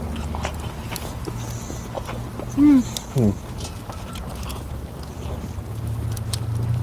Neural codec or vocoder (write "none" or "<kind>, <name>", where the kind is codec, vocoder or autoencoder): none